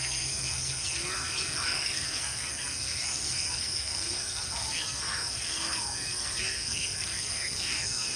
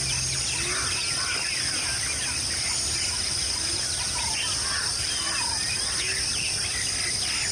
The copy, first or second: first